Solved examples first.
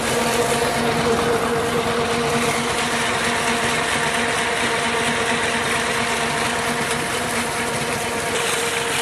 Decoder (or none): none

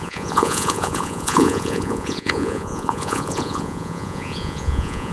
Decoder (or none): vocoder, Vocos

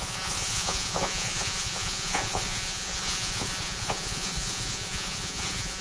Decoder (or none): vocoder, Vocos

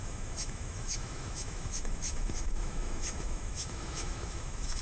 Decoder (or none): autoencoder, DAC-VAE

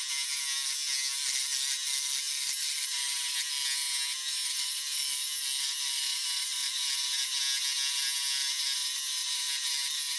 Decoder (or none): none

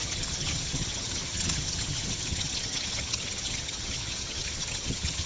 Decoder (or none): vocoder, HiFi-GAN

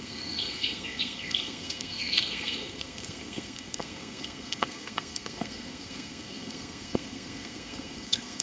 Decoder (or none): codec, SNAC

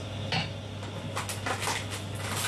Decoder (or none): none